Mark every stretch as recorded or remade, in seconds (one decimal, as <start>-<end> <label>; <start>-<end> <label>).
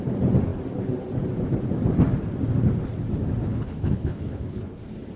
0.0-3.4 recorded; 3.4-4.8 remade; 4.8-5.2 recorded